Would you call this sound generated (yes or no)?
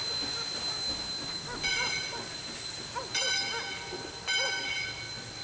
no